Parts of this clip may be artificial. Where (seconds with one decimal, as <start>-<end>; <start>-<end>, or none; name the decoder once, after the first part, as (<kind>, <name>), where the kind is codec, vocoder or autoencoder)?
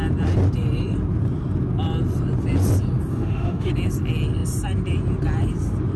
3.1-3.7 (autoencoder, DAC-VAE)